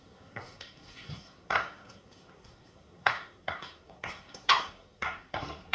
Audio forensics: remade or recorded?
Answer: remade